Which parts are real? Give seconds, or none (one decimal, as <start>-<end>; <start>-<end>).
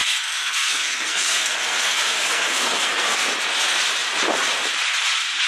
3.3-5.5